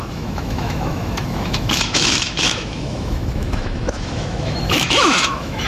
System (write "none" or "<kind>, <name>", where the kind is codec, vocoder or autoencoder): autoencoder, DAC-VAE